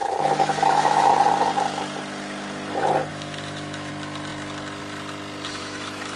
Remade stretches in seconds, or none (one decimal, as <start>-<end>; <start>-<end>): 0.0-1.1; 3.1-3.9; 5.6-6.2